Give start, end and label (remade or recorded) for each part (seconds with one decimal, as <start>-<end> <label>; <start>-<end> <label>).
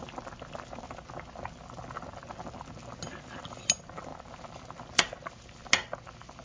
0.0-6.4 recorded